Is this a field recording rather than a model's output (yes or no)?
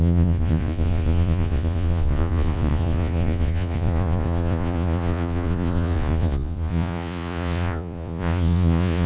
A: no